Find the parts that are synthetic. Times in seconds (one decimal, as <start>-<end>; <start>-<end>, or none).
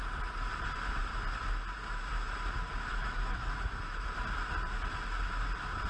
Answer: 3.0-4.2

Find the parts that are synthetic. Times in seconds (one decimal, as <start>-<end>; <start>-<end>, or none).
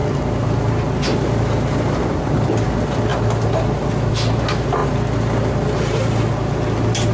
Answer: none